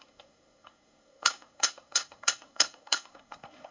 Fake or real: fake